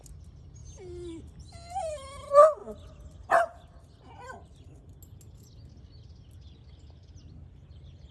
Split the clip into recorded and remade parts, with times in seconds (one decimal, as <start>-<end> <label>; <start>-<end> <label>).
0.0-8.1 recorded